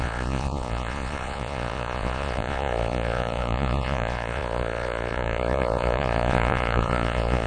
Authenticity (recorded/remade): remade